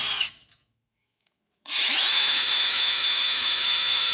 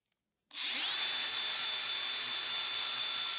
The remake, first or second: first